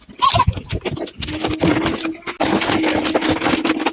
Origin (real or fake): real